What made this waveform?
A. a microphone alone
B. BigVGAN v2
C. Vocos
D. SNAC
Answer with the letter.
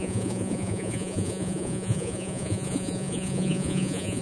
C